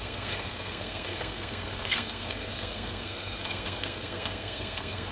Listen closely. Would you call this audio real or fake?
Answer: fake